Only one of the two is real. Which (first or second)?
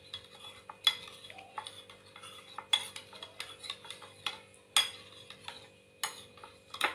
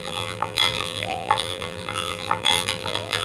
first